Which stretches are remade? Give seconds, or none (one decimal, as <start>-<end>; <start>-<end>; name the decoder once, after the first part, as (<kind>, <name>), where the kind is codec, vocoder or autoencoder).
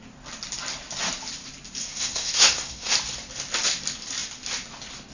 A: 1.8-2.9 (codec, SNAC)